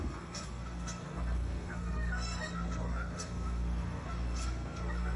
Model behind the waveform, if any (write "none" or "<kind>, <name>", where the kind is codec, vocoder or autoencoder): codec, SNAC